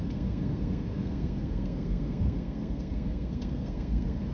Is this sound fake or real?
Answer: fake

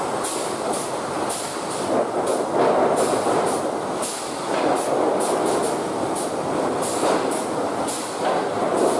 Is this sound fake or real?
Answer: real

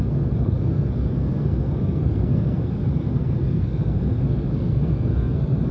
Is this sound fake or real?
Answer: fake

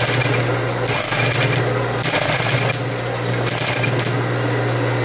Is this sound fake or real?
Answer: real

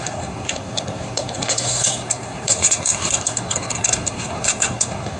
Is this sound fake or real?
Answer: fake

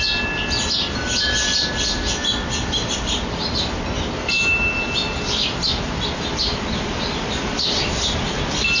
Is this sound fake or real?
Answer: real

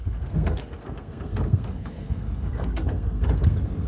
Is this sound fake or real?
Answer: fake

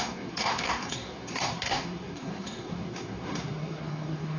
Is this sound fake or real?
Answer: fake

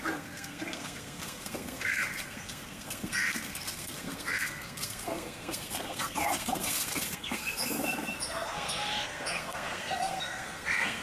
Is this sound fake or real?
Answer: fake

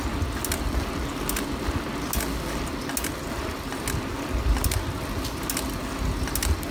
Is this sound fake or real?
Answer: real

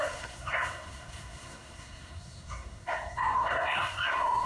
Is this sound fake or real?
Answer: fake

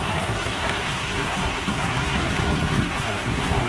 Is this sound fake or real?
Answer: fake